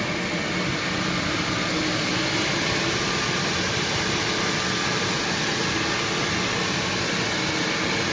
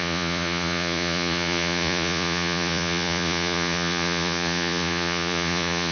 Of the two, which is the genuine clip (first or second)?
first